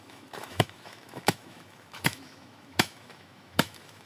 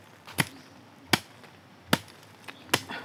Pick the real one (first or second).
second